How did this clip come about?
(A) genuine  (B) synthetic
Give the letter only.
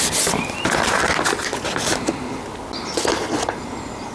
A